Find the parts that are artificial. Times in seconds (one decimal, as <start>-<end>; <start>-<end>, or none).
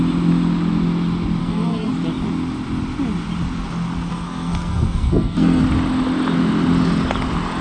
1.4-1.9; 4.1-5.6